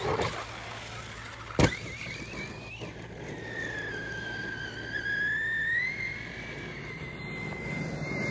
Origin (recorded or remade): recorded